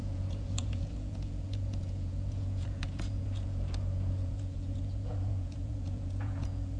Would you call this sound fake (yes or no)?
yes